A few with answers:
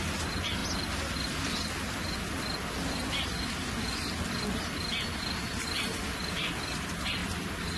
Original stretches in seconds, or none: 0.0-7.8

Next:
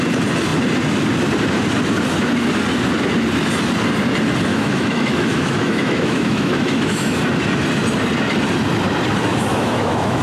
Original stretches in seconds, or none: 0.0-4.5; 7.2-9.3

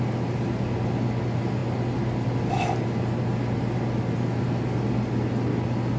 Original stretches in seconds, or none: 0.0-6.0

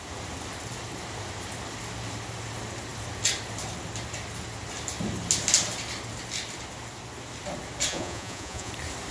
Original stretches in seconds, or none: 0.0-7.9; 8.7-9.1

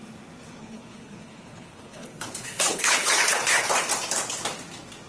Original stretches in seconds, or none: 0.0-0.6; 3.7-5.1

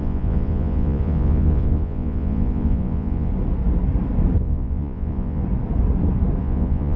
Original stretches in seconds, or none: 3.3-4.4; 5.4-6.4

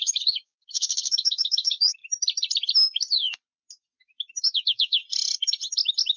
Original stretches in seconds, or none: 2.0-4.4; 5.0-6.2